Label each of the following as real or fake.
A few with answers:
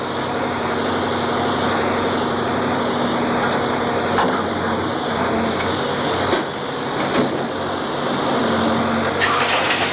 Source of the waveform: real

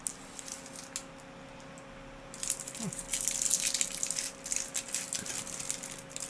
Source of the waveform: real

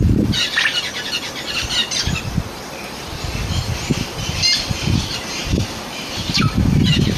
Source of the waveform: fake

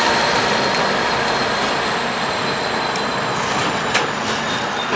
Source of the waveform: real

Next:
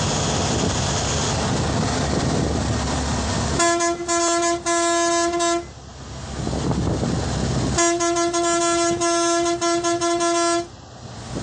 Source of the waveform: real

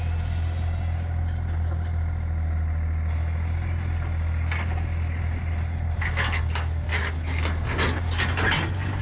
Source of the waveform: real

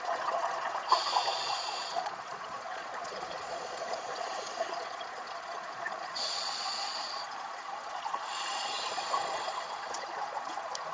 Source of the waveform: fake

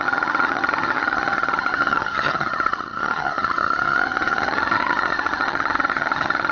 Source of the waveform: fake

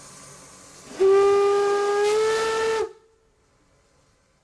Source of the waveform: real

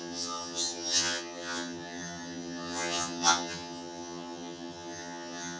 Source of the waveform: fake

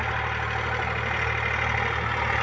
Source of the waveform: real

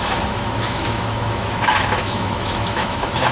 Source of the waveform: fake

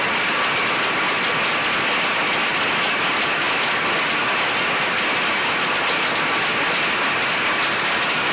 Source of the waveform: real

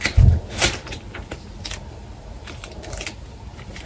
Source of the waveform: real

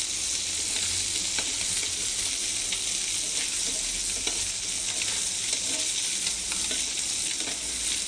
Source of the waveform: real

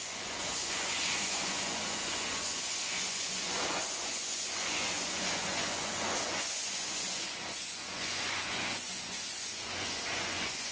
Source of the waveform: fake